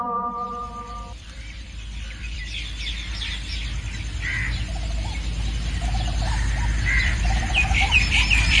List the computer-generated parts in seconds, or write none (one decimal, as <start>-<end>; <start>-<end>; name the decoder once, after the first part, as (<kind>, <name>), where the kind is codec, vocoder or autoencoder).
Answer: 0.0-2.4 (vocoder, BigVGAN v2); 6.8-8.6